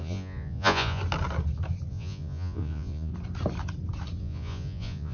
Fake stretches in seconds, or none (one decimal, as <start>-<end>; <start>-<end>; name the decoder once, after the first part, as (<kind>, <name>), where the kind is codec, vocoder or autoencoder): 0.0-1.0 (vocoder, Vocos); 1.9-3.1; 4.2-5.1